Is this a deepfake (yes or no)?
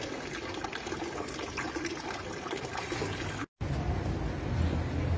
no